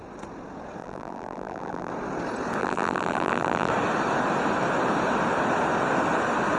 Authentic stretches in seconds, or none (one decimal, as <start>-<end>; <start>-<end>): 0.0-0.8; 1.9-2.6; 3.7-6.6